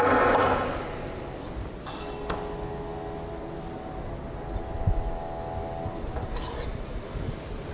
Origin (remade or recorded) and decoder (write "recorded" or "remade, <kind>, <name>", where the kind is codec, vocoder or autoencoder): recorded